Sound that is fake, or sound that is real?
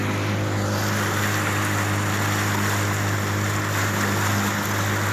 real